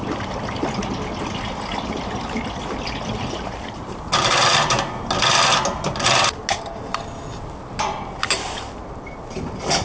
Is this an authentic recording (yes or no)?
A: yes